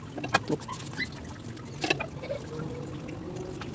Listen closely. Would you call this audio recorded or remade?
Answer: recorded